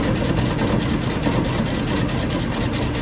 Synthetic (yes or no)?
no